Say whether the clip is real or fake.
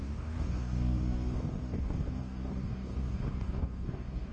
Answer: fake